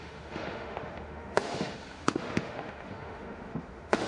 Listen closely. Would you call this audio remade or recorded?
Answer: remade